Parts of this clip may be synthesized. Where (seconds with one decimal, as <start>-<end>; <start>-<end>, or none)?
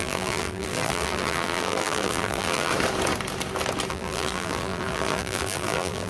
0.0-2.7; 3.9-6.1